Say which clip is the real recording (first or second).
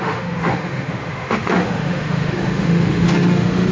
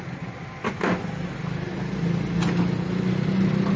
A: second